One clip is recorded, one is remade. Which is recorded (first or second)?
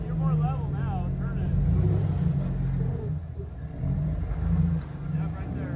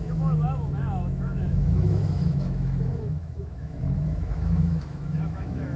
first